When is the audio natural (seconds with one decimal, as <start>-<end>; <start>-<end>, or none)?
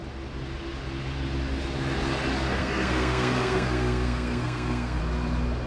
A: 0.0-2.6; 5.0-5.7